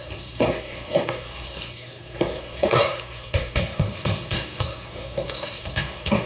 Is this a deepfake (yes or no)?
yes